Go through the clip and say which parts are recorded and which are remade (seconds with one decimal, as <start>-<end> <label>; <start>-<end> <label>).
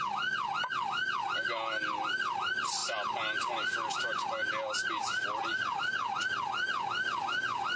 0.0-7.8 recorded